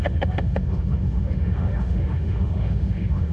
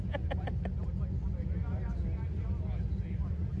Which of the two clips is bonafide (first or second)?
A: second